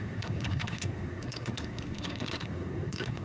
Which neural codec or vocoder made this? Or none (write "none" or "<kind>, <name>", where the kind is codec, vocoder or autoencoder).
codec, SNAC